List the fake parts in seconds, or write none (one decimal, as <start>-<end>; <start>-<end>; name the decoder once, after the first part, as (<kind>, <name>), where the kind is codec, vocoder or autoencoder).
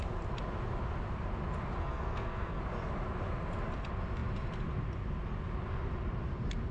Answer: 1.8-2.6 (codec, SNAC)